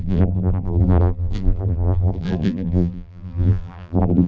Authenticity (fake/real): fake